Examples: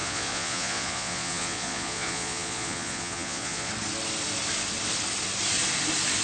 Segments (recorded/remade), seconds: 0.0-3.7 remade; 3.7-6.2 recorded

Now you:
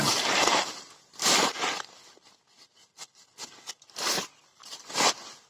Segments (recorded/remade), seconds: 0.0-5.5 recorded

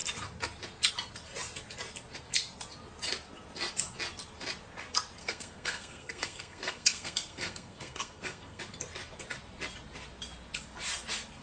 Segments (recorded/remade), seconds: 0.0-5.2 recorded; 5.2-8.6 remade; 8.6-11.4 recorded

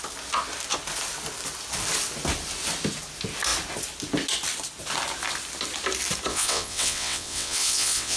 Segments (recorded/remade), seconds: 0.0-6.3 recorded; 6.3-8.2 remade

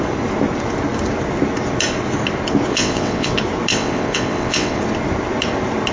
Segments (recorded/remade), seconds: 0.0-2.7 recorded; 2.7-3.3 remade; 3.3-3.7 recorded; 3.7-4.8 remade; 4.8-5.9 recorded

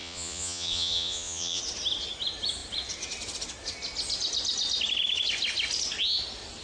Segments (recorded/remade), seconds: 0.0-1.6 remade; 1.6-6.6 recorded